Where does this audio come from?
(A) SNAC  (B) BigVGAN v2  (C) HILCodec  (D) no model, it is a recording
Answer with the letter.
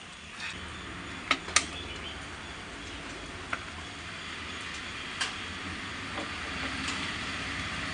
D